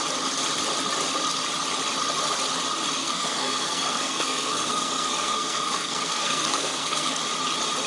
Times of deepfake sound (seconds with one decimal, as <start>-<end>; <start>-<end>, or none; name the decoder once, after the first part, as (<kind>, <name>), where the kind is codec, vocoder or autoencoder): 3.0-7.2 (codec, SNAC)